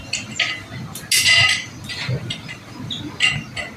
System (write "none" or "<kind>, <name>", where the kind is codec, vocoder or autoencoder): none